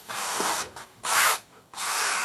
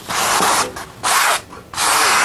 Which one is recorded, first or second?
second